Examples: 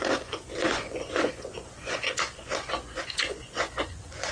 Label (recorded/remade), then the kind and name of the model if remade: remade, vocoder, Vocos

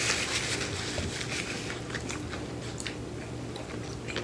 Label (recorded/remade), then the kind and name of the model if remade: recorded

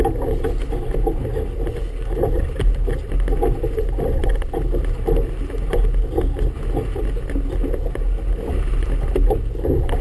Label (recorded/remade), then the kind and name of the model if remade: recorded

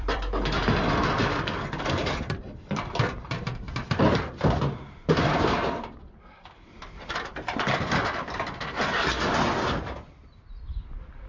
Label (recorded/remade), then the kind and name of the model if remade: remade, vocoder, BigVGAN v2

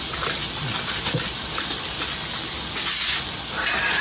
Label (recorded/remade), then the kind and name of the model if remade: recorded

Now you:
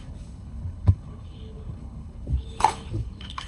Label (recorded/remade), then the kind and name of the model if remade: remade, codec, HILCodec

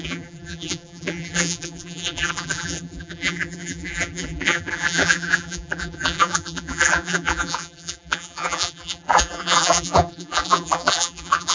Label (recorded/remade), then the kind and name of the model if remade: remade, vocoder, BigVGAN v2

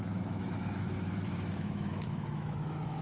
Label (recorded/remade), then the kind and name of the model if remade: remade, autoencoder, DAC-VAE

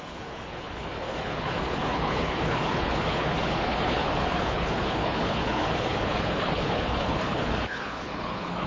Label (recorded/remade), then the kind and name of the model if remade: remade, codec, HILCodec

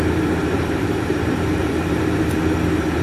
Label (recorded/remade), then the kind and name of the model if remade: remade, vocoder, BigVGAN v2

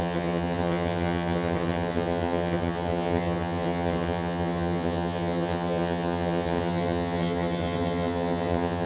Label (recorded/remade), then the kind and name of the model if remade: remade, vocoder, HiFi-GAN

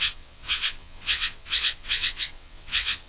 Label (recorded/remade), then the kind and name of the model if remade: remade, vocoder, WaveNeXt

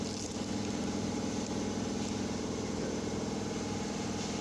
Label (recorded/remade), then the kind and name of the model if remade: recorded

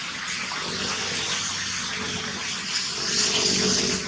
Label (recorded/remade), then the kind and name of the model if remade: recorded